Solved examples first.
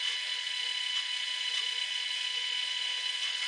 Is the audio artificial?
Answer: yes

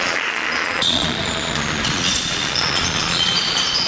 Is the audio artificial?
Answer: yes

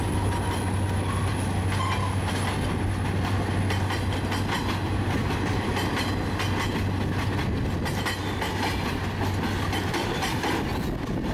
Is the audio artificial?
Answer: no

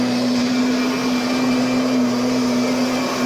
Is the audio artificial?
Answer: no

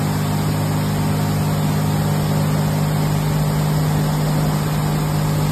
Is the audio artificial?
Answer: no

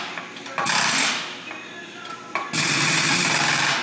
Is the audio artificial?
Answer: no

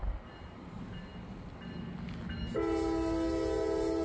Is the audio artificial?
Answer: no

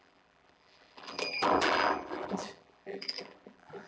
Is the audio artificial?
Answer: yes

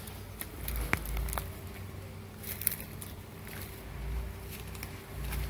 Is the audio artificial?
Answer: no